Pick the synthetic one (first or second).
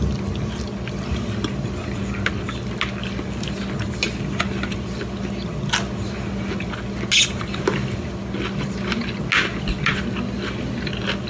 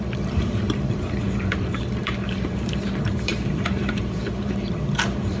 second